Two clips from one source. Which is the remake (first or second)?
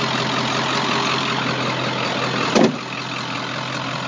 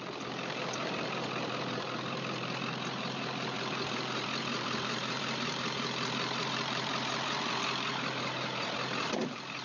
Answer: second